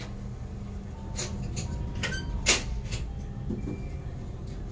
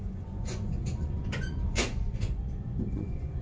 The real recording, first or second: first